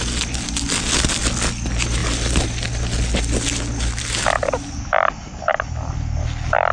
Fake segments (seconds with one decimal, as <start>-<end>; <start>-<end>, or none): none